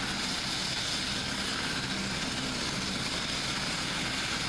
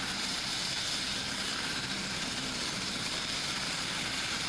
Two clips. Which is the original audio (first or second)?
first